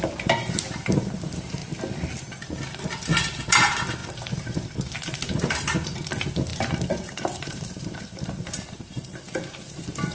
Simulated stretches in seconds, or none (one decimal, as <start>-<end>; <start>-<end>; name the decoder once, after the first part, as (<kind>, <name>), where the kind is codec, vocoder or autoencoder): 0.0-1.6 (vocoder, BigVGAN v2); 3.5-10.1